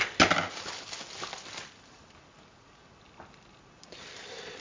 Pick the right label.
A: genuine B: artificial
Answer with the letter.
A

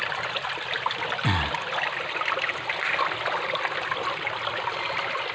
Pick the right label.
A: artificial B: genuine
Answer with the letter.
B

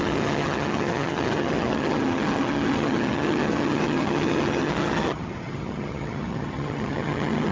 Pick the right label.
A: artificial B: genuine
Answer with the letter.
A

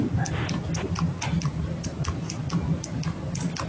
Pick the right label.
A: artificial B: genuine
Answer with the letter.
B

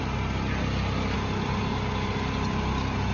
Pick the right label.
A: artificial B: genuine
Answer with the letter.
B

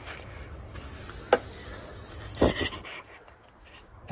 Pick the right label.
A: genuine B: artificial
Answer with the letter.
A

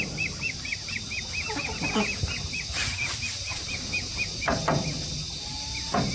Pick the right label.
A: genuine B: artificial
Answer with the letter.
A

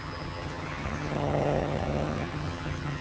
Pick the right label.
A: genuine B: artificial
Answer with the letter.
B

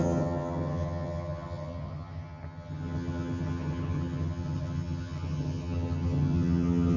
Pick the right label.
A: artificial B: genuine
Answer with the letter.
A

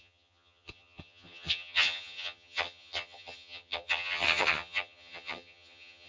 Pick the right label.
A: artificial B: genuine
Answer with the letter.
A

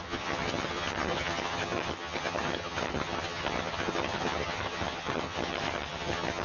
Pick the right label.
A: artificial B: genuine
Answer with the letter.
A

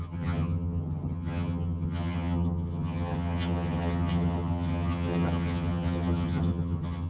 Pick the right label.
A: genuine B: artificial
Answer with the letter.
B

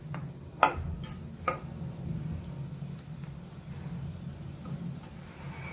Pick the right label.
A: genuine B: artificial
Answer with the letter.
A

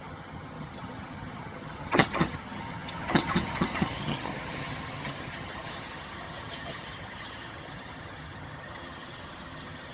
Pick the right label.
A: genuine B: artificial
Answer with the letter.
B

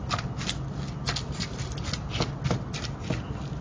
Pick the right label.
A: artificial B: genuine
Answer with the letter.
B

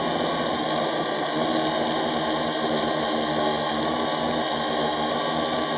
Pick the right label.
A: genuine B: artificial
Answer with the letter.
A